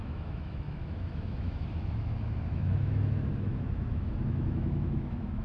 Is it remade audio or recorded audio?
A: remade